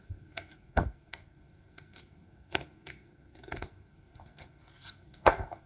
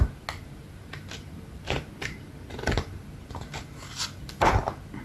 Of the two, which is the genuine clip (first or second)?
second